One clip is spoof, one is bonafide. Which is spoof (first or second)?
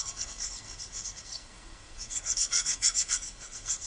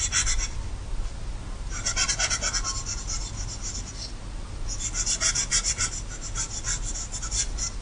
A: first